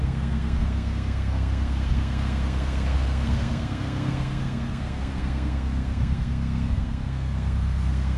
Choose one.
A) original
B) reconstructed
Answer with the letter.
B